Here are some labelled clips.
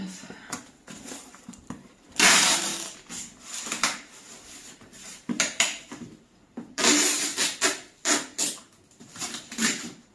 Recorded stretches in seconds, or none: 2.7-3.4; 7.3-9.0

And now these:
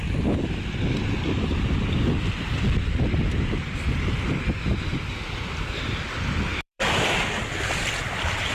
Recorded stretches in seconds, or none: 0.0-2.8; 6.0-6.5

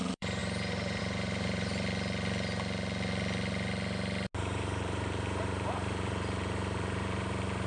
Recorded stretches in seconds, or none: 1.7-4.4

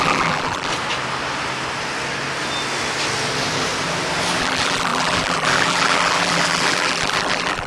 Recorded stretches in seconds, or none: 0.7-4.4

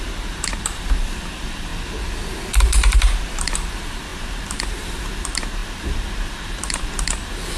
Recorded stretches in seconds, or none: 1.7-2.6

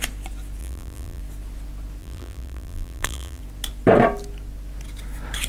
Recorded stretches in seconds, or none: 0.0-0.6; 1.2-2.0; 3.4-5.5